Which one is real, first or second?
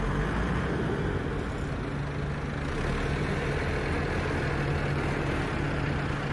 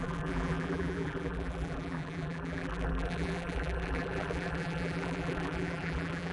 first